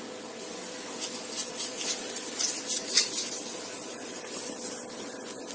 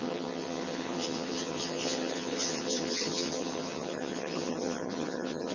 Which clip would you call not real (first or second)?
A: second